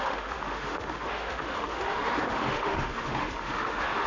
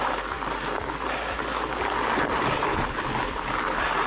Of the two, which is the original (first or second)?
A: second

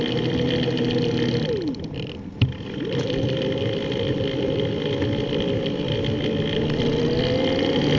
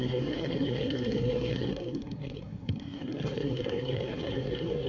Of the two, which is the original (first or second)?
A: first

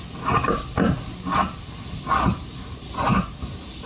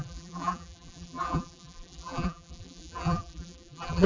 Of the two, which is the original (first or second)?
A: first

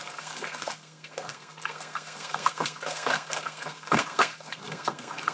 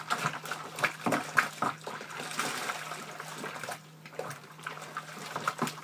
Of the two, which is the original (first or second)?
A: second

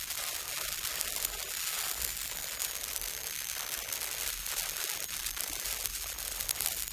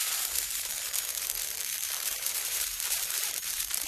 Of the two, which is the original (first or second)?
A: first